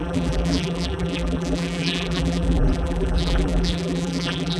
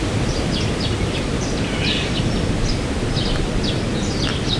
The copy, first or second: first